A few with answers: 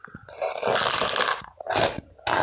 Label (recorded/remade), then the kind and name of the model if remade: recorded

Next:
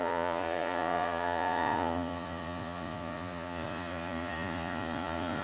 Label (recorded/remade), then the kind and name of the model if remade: remade, vocoder, Vocos